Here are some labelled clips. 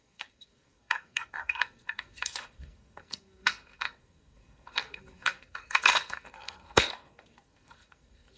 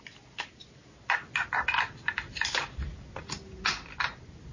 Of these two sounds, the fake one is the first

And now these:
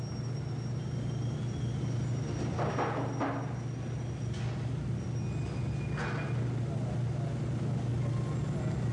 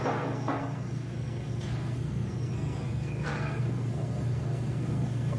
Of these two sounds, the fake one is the second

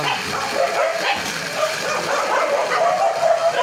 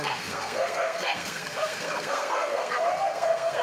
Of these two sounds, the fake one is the second